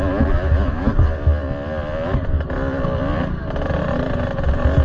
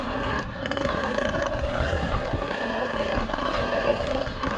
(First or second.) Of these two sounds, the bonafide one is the first